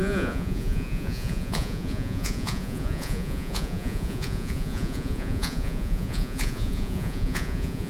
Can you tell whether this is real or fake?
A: fake